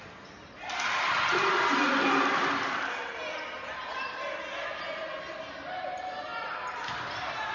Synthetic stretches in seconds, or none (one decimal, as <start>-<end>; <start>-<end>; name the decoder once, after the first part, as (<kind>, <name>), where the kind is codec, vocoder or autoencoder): none